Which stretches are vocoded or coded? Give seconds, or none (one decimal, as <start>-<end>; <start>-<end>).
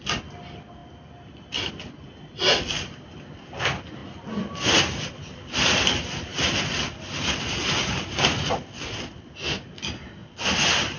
none